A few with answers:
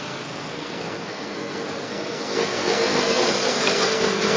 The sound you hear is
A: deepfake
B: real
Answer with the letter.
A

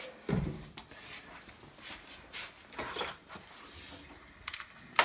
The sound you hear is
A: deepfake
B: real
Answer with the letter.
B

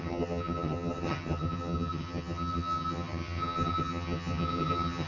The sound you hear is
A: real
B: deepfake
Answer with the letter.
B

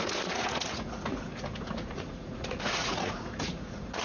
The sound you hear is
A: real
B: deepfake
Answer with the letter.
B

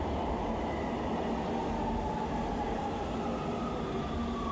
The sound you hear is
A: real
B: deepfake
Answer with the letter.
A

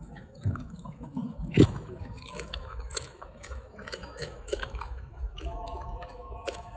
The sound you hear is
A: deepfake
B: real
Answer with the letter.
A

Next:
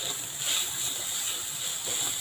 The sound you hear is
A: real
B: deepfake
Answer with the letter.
A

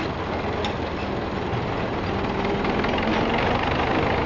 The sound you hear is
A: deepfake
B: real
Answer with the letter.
B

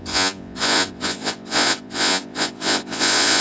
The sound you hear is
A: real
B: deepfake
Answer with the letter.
B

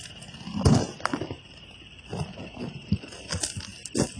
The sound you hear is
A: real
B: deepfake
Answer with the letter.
A